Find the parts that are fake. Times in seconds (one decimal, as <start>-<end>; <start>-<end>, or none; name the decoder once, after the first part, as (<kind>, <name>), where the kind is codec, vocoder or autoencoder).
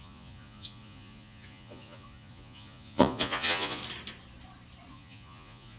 0.0-3.8 (vocoder, Vocos); 4.9-5.8